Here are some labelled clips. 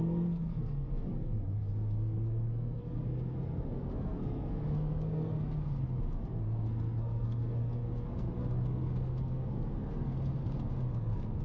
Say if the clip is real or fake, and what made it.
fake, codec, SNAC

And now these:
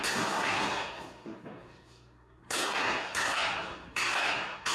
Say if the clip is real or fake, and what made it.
fake, codec, SNAC